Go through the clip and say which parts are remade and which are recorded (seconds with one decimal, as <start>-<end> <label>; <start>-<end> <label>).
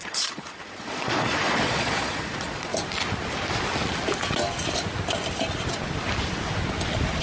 0.0-2.7 remade; 2.7-7.2 recorded